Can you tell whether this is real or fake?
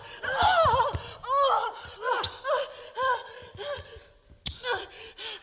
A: real